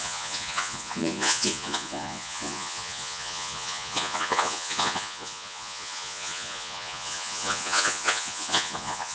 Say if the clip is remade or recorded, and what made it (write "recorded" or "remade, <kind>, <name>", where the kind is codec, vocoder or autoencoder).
remade, vocoder, Vocos